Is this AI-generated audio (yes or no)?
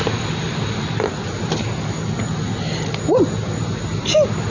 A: no